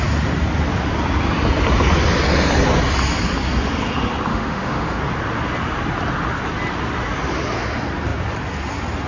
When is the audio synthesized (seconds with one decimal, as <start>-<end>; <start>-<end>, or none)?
4.3-5.0